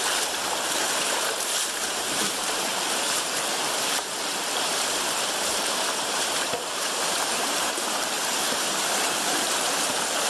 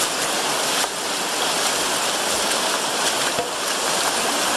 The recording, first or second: second